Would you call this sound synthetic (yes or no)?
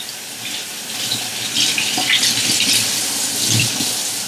yes